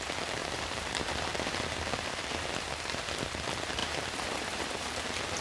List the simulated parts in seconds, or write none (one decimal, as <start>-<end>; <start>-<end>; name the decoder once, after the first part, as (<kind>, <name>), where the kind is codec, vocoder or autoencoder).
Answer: 0.4-3.0 (vocoder, BigVGAN v2); 3.8-4.9